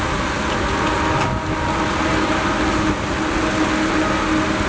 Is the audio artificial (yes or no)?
no